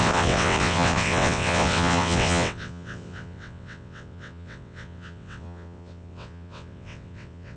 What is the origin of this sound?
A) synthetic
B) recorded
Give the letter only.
A